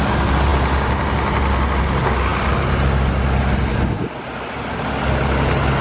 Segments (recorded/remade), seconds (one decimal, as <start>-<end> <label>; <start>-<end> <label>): 0.0-5.8 recorded